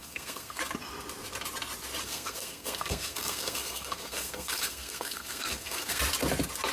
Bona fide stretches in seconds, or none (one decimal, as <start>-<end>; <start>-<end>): 0.6-2.0; 6.0-6.7